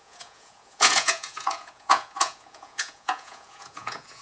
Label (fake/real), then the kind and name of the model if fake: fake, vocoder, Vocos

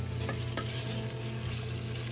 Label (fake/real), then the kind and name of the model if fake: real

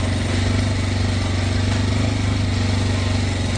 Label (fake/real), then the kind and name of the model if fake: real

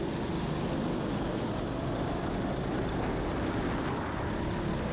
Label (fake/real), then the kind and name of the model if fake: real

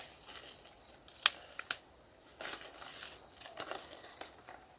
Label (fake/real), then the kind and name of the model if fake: real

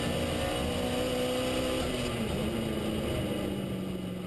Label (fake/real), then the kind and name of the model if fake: real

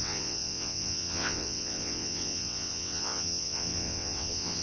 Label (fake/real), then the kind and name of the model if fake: fake, vocoder, WaveNeXt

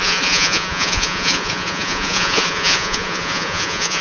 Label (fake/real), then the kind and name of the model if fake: fake, vocoder, Vocos